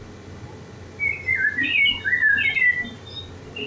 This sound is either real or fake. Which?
real